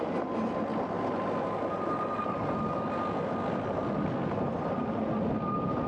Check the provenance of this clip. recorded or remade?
recorded